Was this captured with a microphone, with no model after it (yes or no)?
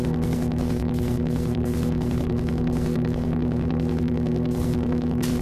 no